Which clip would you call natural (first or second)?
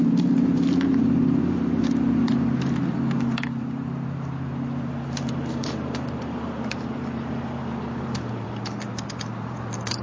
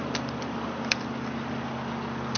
second